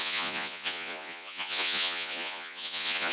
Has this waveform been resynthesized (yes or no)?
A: yes